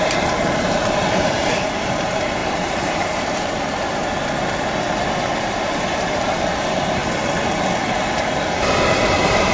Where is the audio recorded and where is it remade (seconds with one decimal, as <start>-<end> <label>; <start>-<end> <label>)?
0.0-4.0 remade; 4.0-5.5 recorded; 5.5-7.0 remade; 7.0-8.8 recorded; 8.8-9.5 remade